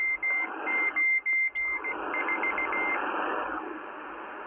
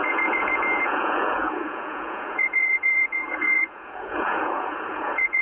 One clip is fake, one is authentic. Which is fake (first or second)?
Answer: second